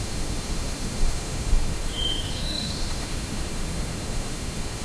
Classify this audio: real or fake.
fake